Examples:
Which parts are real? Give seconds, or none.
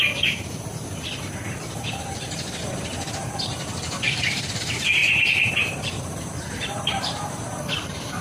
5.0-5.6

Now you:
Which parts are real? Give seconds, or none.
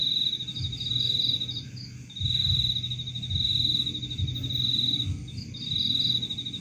0.0-6.6